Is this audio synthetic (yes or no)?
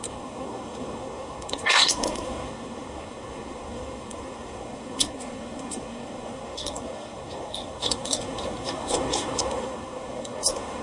yes